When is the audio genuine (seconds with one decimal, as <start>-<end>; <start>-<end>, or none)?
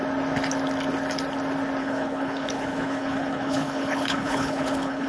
0.0-1.8